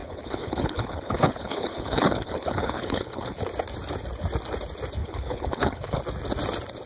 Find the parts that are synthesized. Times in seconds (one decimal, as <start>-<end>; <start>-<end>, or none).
0.0-3.4; 5.0-6.0